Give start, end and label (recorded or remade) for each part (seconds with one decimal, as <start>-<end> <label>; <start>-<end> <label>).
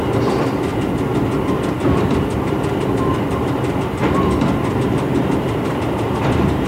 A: 0.0-0.7 remade; 0.7-1.6 recorded; 1.6-6.7 remade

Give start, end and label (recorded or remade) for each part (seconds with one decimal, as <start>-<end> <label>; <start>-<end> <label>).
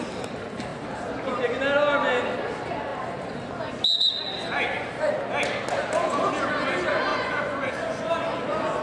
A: 0.0-7.1 recorded; 7.1-8.1 remade; 8.1-8.8 recorded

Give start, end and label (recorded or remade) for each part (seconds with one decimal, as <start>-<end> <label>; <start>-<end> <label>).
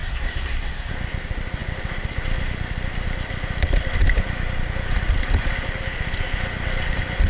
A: 0.0-0.9 remade; 0.9-7.3 recorded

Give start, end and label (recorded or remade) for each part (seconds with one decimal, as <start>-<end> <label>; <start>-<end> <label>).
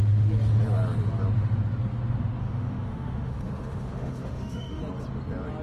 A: 0.0-2.4 recorded; 2.4-4.8 remade; 4.8-5.6 recorded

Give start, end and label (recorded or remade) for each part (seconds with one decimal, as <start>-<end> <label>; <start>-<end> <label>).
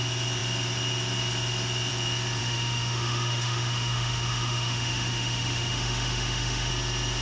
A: 0.0-2.4 recorded; 2.4-6.7 remade; 6.7-7.2 recorded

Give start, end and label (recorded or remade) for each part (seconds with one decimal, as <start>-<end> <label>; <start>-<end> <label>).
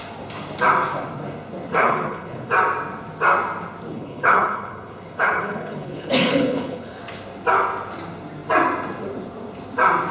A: 0.0-1.7 recorded; 1.7-2.5 remade; 2.5-3.9 recorded; 3.9-7.0 remade; 7.0-10.1 recorded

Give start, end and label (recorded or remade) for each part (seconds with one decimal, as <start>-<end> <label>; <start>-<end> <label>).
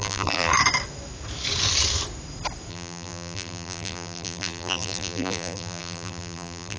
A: 0.0-0.5 remade; 0.5-2.7 recorded; 2.7-6.8 remade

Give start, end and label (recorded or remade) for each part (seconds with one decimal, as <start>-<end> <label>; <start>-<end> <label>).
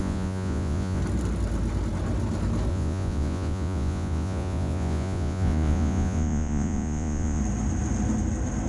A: 0.0-1.0 remade; 1.0-2.7 recorded; 2.7-7.4 remade; 7.4-8.7 recorded